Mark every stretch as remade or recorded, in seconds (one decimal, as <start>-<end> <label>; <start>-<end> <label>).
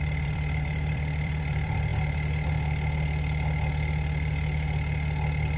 0.0-1.9 remade; 1.9-5.6 recorded